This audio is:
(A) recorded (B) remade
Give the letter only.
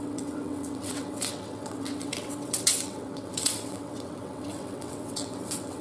B